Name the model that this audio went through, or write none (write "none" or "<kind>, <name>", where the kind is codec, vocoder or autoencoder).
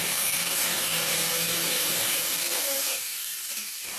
codec, DAC